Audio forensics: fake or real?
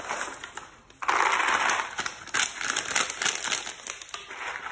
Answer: real